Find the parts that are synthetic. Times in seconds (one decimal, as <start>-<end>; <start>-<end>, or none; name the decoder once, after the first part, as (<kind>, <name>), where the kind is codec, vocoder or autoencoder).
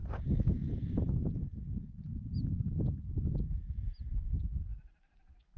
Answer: none